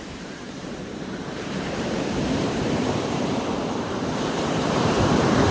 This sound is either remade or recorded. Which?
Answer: remade